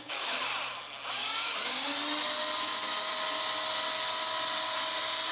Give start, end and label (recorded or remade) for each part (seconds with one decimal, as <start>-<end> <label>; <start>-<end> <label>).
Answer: 0.0-0.5 remade; 0.5-1.1 recorded; 1.1-1.9 remade; 1.9-2.6 recorded; 2.6-3.1 remade; 3.1-5.3 recorded